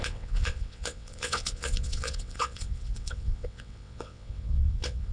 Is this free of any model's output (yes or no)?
no